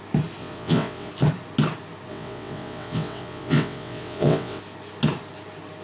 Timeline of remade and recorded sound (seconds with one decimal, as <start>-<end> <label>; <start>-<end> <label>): 0.0-0.4 recorded; 0.4-1.1 remade; 1.1-2.1 recorded; 2.1-4.6 remade; 4.6-5.8 recorded